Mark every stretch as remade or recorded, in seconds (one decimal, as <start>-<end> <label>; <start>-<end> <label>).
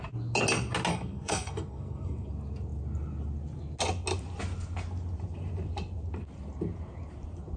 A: 0.0-0.9 recorded; 0.9-2.3 remade; 2.3-7.6 recorded